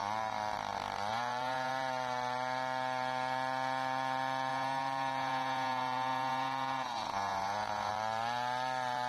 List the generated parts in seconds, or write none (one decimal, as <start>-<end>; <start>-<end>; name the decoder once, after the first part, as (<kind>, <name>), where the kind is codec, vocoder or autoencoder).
1.1-1.7 (vocoder, Vocos); 4.5-7.9